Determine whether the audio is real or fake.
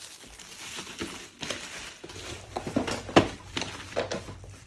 real